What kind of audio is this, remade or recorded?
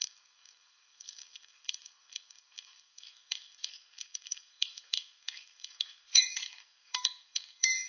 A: remade